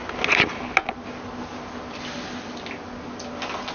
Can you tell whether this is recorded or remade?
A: recorded